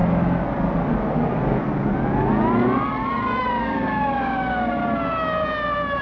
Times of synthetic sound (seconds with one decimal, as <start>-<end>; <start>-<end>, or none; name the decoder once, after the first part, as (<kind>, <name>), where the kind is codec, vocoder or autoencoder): 3.6-4.8 (codec, DAC)